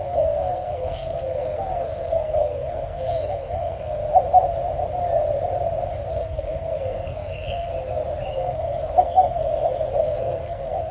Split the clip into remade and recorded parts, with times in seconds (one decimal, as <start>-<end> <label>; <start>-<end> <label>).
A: 0.0-4.0 remade; 4.0-6.1 recorded; 6.1-7.7 remade; 7.7-8.3 recorded; 8.3-9.5 remade; 9.5-10.0 recorded; 10.0-10.9 remade